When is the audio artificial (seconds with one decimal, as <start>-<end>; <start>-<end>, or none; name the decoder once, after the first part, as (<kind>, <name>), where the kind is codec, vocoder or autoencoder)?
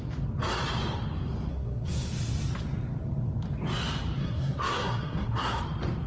1.5-2.1 (codec, SNAC); 4.2-5.6